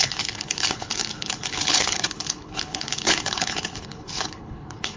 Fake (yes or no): yes